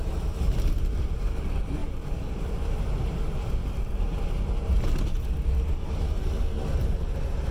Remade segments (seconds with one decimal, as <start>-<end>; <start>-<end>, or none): 3.6-4.3